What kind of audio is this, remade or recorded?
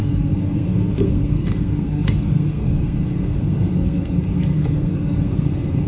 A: remade